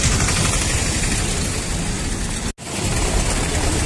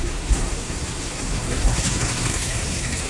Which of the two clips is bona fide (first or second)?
first